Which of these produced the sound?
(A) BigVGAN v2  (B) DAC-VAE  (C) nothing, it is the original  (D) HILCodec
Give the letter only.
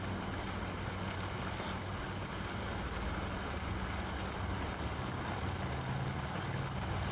C